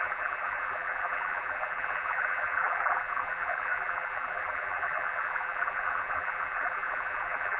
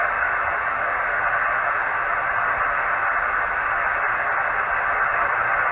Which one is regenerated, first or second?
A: first